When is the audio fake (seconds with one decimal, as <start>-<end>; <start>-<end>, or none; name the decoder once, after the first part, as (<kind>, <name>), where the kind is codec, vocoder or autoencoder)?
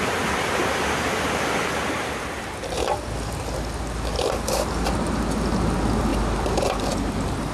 none